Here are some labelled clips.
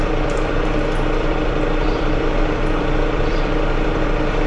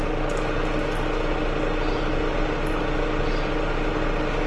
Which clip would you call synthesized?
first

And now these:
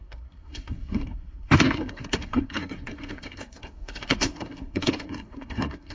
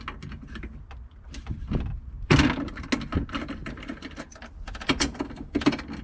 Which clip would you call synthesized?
first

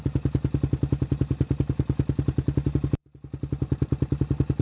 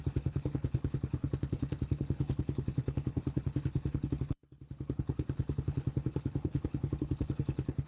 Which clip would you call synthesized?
second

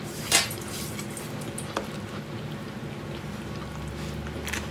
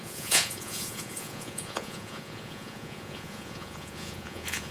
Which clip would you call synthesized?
second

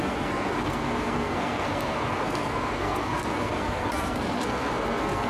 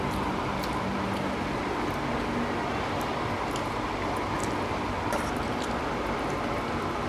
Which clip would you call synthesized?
first